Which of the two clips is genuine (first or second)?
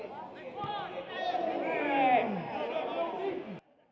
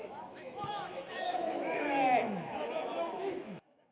first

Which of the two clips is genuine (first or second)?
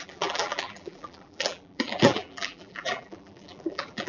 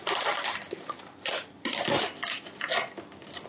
second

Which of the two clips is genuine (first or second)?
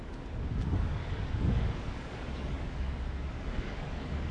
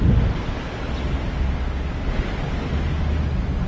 second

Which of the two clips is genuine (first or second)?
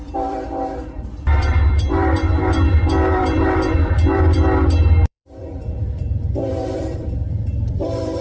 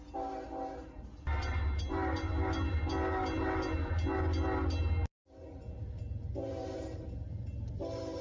second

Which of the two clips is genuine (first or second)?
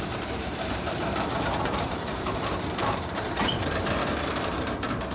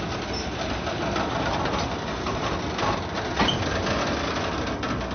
second